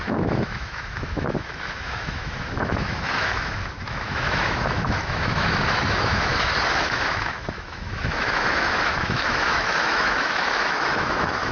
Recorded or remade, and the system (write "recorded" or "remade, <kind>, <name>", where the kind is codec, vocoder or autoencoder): remade, autoencoder, DAC-VAE